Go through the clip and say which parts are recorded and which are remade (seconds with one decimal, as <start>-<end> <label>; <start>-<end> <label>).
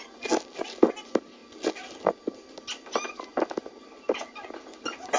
0.0-5.2 recorded